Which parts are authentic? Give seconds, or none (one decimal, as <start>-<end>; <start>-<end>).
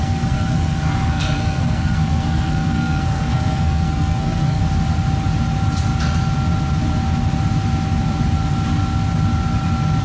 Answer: 4.6-10.0